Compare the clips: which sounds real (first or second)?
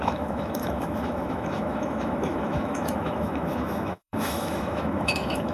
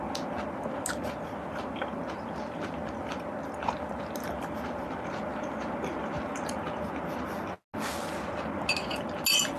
second